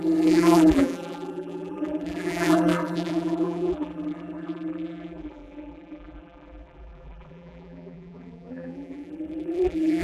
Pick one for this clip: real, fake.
fake